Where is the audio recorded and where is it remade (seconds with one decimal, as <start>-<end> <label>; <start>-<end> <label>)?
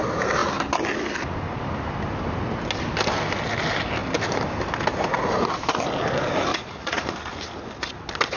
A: 0.0-6.5 recorded; 6.5-7.0 remade; 7.0-8.4 recorded